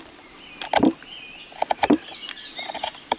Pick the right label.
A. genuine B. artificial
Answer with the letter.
A